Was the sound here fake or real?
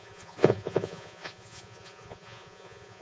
fake